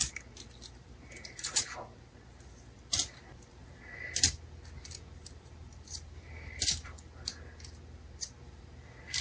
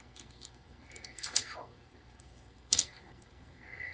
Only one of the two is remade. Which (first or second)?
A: second